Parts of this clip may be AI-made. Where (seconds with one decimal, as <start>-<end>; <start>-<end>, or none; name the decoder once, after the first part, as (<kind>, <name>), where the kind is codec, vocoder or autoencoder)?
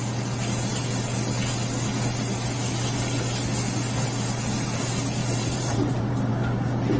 5.2-6.3 (vocoder, BigVGAN v2)